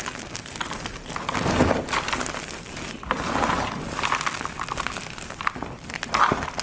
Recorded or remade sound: recorded